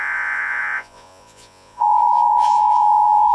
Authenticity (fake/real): fake